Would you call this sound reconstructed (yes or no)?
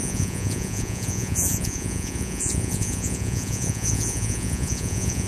yes